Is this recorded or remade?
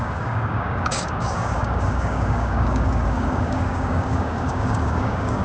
remade